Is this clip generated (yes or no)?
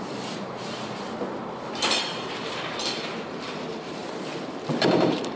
yes